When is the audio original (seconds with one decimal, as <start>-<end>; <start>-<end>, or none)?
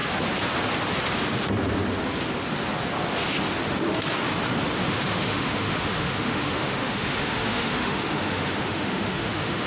0.0-4.8